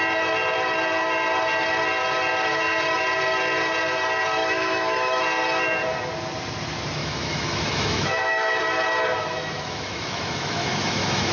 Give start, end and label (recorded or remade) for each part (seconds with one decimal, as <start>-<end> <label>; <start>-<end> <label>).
0.0-4.4 recorded; 4.4-5.2 remade; 5.2-7.0 recorded; 7.0-8.6 remade; 8.6-9.2 recorded; 9.2-11.3 remade